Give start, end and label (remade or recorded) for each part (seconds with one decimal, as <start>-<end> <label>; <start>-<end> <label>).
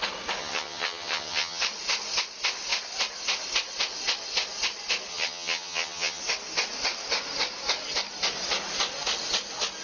0.0-0.4 recorded; 0.4-1.6 remade; 1.6-5.1 recorded; 5.1-6.2 remade; 6.2-9.8 recorded